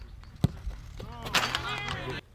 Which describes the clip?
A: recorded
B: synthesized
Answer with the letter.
A